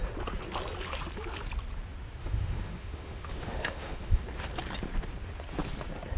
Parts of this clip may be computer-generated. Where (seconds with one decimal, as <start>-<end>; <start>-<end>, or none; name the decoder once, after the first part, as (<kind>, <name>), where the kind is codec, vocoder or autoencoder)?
2.2-4.2 (autoencoder, DAC-VAE)